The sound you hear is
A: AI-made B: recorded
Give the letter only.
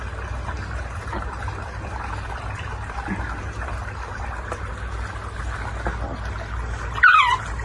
B